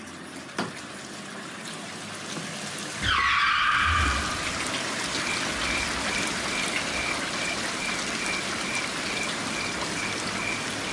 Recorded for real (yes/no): yes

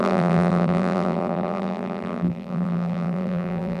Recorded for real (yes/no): no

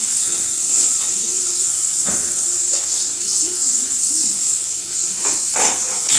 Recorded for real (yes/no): no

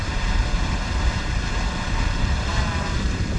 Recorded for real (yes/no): no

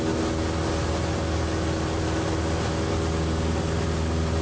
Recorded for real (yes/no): yes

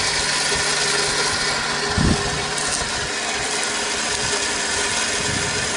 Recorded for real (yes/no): yes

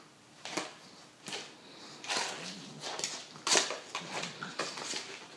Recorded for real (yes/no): yes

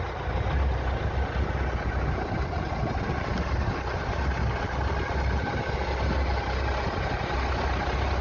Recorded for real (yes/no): yes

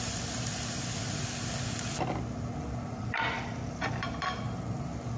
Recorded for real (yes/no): yes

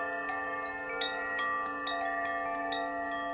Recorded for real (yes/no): yes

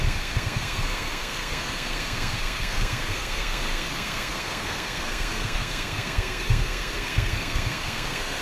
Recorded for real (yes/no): no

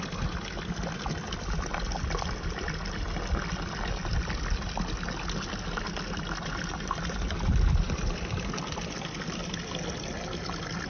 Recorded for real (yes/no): yes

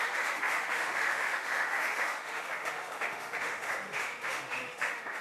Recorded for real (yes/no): no